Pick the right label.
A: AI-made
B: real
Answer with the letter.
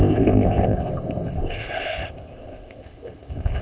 A